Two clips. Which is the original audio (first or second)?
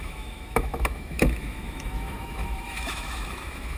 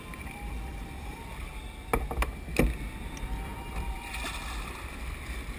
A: second